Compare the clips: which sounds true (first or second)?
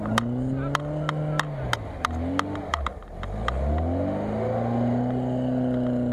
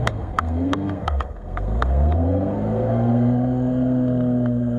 first